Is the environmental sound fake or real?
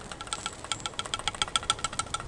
real